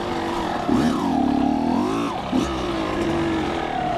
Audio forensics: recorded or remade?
recorded